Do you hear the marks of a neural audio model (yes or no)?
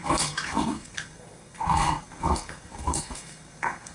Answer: yes